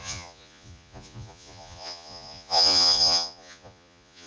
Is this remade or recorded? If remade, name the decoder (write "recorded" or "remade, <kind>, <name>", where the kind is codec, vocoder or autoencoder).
remade, vocoder, Vocos